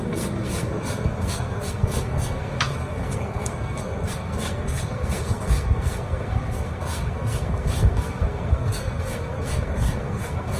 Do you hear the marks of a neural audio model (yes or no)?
yes